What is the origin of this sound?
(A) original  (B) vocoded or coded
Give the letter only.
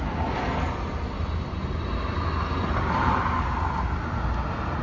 A